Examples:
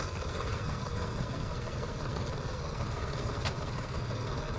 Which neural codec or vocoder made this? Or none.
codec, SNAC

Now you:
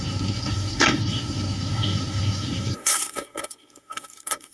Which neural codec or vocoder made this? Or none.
codec, SNAC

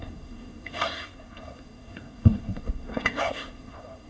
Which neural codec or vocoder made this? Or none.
codec, SNAC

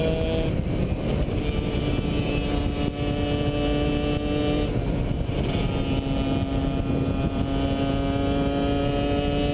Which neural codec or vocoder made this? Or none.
none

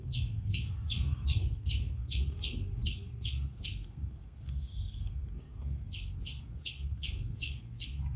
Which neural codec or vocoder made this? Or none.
codec, SNAC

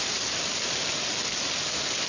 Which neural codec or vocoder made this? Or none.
none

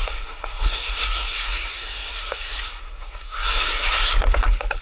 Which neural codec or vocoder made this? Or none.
codec, SNAC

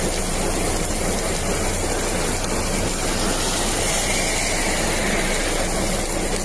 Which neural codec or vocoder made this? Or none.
none